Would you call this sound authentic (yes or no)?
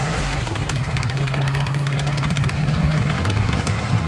no